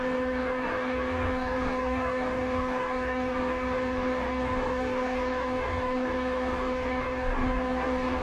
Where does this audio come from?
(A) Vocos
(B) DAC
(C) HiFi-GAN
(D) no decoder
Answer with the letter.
B